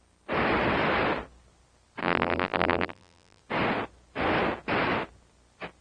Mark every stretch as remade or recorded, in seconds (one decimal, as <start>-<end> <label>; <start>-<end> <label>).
0.0-2.0 recorded; 2.0-3.4 remade; 3.4-5.8 recorded